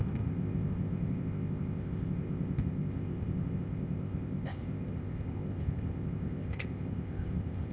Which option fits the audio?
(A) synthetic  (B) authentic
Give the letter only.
A